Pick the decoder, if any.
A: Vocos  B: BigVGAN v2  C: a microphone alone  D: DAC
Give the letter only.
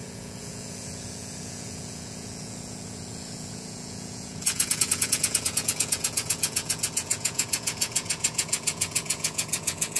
A